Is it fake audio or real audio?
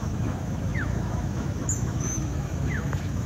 fake